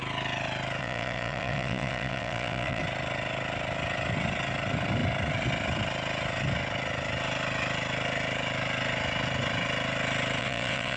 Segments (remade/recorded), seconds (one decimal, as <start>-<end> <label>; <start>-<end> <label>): 0.0-0.8 recorded; 0.8-2.8 remade; 2.8-10.4 recorded; 10.4-11.0 remade